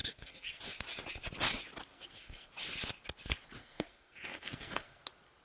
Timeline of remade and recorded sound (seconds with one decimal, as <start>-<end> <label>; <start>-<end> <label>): 0.0-0.6 remade; 0.6-1.9 recorded; 1.9-2.5 remade; 2.5-3.6 recorded; 3.6-5.0 remade; 5.0-5.4 recorded